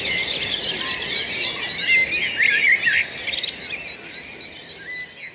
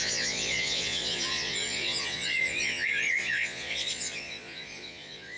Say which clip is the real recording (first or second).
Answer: first